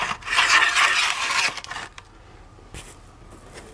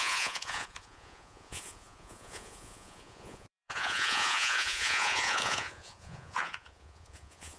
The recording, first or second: first